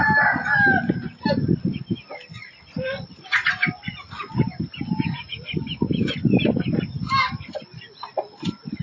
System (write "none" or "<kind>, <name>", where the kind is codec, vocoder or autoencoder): none